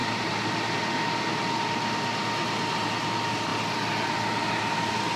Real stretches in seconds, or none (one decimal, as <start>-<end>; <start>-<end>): 0.7-5.2